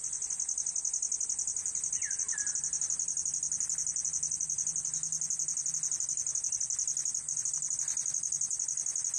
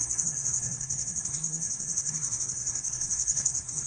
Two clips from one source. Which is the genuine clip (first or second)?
first